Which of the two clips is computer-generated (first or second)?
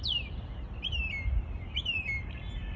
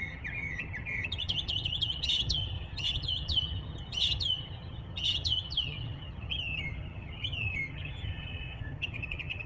second